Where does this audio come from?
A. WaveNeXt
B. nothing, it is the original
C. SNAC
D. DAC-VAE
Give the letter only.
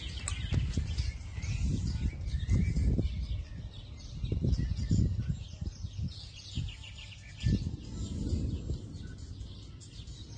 B